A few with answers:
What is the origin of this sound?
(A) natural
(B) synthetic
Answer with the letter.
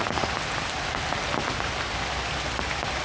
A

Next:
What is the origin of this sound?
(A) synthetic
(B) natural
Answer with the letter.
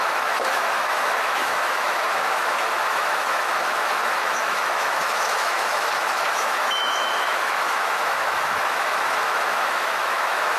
A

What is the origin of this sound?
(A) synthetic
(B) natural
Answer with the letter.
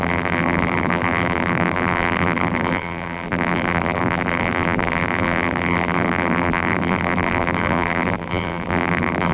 A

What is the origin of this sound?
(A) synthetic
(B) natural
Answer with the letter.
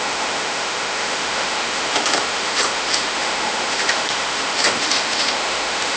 A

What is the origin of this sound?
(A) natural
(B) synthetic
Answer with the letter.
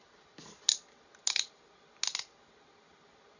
A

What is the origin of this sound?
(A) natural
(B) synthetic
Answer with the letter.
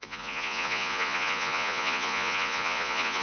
B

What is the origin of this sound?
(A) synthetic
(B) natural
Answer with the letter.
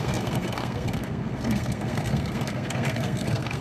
A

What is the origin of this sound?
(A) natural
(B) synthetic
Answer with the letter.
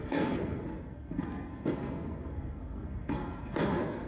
B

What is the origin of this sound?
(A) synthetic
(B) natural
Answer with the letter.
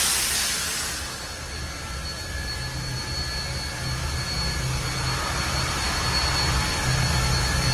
B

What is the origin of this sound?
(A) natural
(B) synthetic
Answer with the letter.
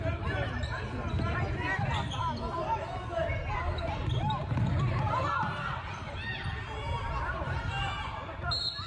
A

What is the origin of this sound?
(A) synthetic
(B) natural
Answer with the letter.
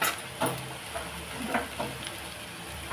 B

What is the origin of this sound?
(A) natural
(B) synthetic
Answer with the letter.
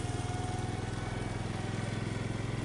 A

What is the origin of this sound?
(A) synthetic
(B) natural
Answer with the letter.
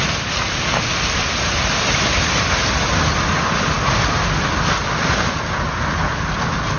B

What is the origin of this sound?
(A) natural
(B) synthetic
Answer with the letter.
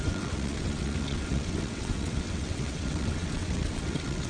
B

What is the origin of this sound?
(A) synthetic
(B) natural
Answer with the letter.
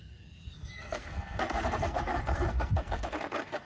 A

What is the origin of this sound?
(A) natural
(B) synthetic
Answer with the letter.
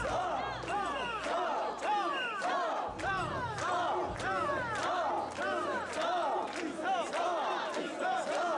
A